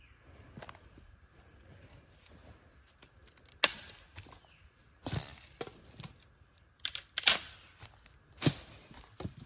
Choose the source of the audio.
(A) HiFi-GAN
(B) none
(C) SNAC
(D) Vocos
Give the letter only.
B